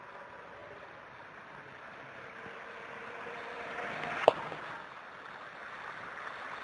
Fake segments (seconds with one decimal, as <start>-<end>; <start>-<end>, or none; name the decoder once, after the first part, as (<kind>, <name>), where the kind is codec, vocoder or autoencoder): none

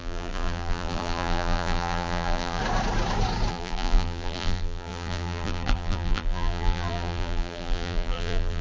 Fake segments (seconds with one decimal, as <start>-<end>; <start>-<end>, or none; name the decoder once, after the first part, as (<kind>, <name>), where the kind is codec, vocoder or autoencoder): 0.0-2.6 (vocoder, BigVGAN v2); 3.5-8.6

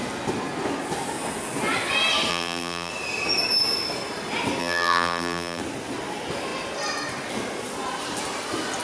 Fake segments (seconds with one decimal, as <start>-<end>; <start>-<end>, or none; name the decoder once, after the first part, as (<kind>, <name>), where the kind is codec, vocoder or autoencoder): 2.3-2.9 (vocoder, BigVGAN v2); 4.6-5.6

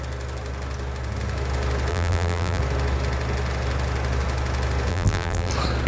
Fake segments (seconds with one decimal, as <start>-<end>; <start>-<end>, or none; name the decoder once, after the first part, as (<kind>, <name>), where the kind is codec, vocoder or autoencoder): 1.9-2.6 (vocoder, BigVGAN v2); 4.9-5.5

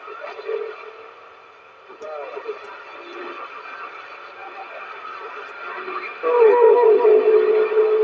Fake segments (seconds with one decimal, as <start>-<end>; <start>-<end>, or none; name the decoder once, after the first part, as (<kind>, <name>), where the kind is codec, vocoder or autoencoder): none

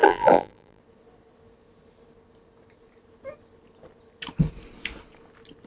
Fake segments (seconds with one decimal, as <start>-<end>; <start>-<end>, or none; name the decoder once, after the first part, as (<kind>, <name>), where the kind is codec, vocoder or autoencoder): 0.0-0.8 (vocoder, BigVGAN v2)

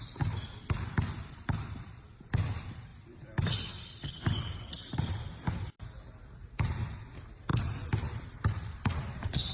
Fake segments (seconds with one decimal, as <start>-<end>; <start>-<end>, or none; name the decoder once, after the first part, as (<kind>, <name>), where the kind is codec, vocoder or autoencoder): 0.0-7.5 (vocoder, BigVGAN v2); 8.2-9.5

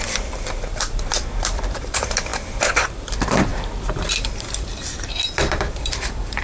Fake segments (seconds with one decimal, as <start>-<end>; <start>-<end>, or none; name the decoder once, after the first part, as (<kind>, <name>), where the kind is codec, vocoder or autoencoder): 0.0-6.4 (vocoder, BigVGAN v2)